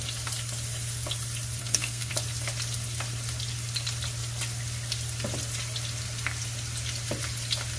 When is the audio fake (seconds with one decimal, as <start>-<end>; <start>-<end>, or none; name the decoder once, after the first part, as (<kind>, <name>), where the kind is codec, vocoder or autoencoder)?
1.6-2.1 (codec, SNAC)